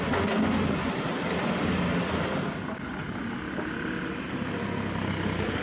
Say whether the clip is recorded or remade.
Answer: recorded